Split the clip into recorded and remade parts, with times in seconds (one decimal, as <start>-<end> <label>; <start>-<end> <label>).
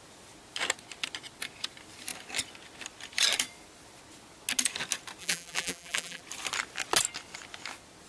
0.0-5.2 recorded; 5.2-6.2 remade; 6.2-8.1 recorded